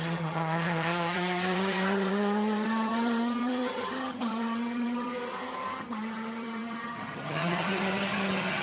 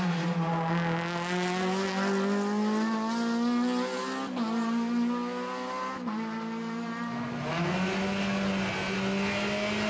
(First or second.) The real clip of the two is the second